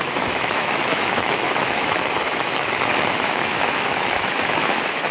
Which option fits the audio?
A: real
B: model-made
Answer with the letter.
B